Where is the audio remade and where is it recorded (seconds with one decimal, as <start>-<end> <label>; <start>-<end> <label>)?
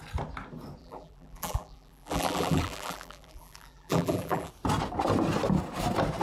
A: 0.0-0.8 recorded; 0.8-4.5 remade; 4.5-6.2 recorded